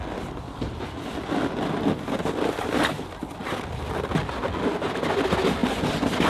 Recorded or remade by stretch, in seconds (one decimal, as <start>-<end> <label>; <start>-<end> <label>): 0.0-6.3 recorded